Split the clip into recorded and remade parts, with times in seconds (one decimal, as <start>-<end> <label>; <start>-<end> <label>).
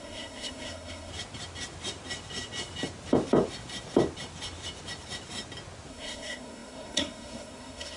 0.0-1.1 remade; 1.1-5.9 recorded; 5.9-8.0 remade